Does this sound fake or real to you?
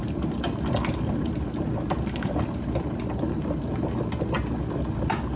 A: real